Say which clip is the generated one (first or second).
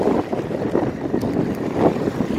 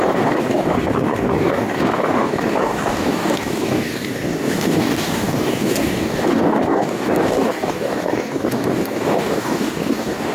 second